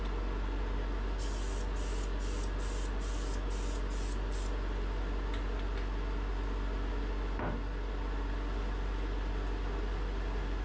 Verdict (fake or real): real